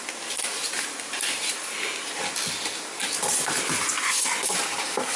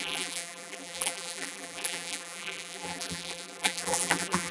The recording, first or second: first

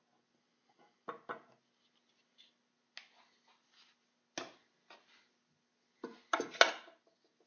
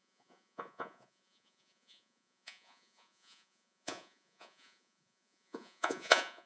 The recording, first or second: first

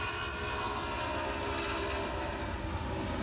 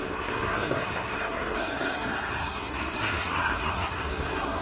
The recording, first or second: first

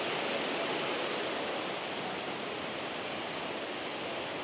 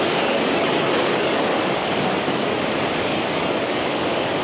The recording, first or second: first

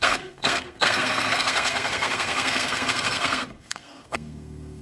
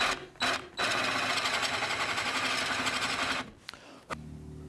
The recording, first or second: second